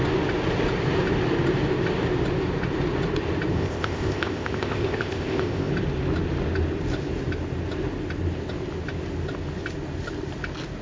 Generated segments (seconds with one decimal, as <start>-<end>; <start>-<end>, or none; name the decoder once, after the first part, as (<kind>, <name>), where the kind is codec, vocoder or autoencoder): 3.5-5.7 (codec, ZipCodec)